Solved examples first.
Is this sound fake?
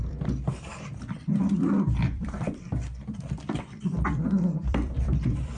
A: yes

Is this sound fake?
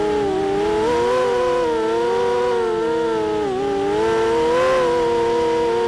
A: no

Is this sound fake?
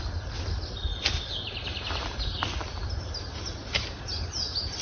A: no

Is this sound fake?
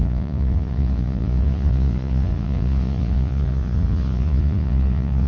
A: yes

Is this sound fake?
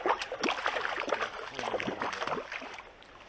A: no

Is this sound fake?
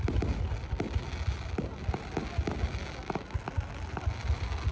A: no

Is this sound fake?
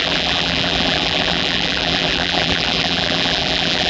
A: yes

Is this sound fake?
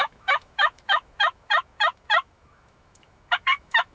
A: yes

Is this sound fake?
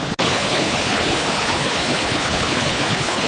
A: yes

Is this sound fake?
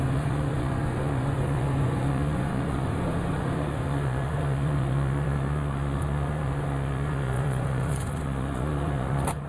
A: yes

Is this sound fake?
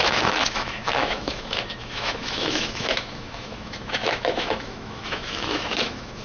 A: yes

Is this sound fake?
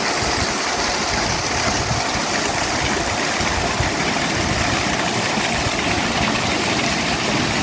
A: no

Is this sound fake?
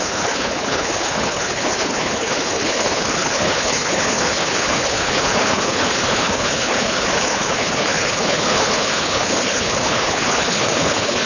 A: yes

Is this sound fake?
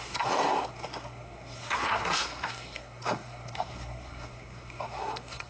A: yes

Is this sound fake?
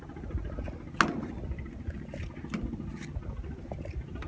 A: no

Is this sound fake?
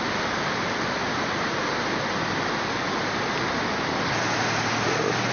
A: no